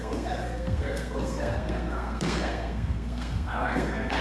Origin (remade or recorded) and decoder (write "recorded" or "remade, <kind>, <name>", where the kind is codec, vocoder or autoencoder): remade, codec, SNAC